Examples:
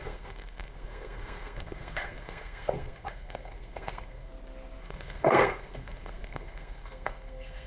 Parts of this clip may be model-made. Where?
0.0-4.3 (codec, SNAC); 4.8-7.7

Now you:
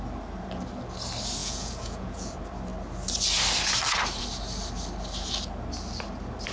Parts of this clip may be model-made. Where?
1.4-2.3 (vocoder, Vocos)

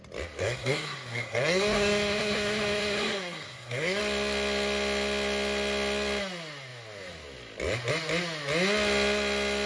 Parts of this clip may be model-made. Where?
0.4-4.0 (codec, SNAC)